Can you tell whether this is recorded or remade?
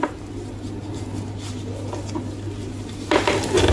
recorded